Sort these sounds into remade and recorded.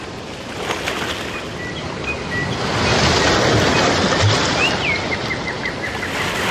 recorded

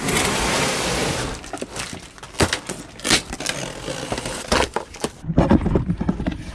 recorded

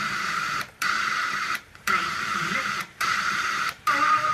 remade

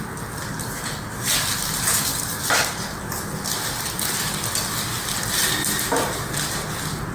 recorded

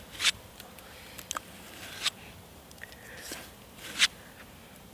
recorded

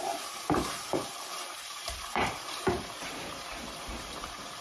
remade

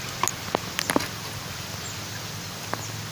recorded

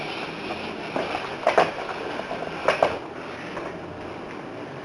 recorded